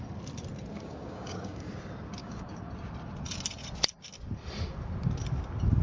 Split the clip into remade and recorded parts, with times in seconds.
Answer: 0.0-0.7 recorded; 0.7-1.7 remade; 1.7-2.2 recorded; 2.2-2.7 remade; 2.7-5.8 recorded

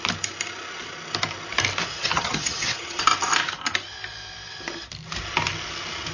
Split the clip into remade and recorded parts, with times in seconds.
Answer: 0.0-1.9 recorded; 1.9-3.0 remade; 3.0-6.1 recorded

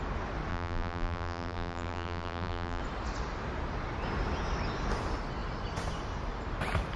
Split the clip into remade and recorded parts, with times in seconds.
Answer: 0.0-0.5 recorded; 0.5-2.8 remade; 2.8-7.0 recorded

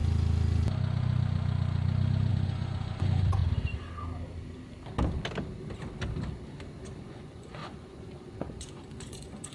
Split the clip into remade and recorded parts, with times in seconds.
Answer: 0.0-2.3 recorded; 2.3-3.4 remade; 3.4-7.0 recorded; 7.0-9.5 remade

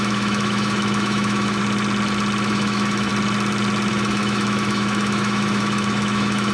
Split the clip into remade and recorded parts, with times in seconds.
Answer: 0.0-1.6 remade; 1.6-2.5 recorded; 2.5-3.1 remade; 3.1-3.9 recorded; 3.9-6.5 remade